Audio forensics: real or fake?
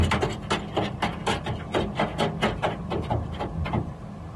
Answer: real